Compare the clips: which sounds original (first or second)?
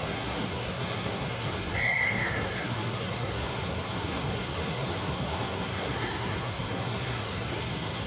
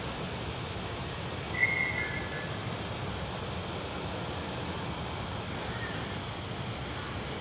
second